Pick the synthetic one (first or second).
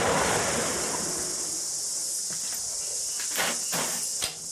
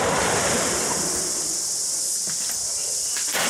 second